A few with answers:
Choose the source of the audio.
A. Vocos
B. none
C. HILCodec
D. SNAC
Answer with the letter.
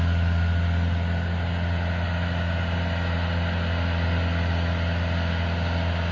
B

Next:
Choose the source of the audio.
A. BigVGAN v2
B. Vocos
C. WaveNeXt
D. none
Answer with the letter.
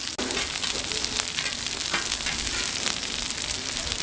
D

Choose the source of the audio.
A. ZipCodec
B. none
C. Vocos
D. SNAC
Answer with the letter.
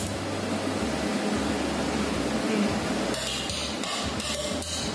B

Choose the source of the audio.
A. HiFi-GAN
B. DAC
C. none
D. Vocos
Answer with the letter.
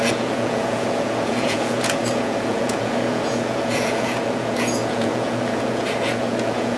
D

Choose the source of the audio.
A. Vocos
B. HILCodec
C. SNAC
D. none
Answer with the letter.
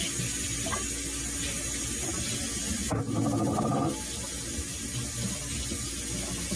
D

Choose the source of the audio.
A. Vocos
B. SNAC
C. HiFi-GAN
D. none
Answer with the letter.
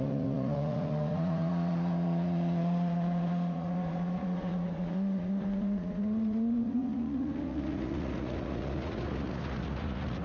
A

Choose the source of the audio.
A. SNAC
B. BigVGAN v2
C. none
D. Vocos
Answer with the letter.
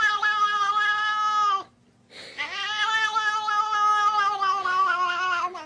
C